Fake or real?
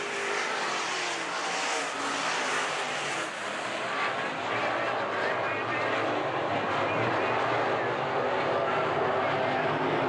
real